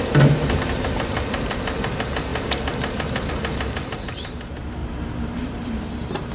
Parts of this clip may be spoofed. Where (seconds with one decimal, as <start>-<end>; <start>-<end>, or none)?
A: 4.8-6.3